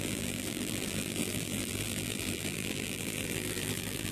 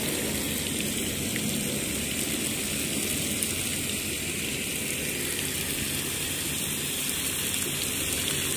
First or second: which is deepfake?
first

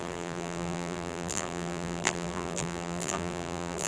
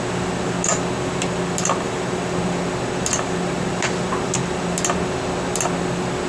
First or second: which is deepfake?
first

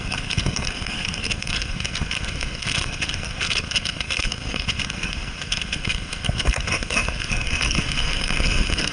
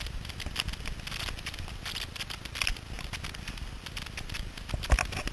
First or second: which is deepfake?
first